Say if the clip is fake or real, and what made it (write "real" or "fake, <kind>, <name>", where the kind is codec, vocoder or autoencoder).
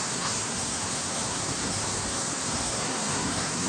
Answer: fake, codec, SNAC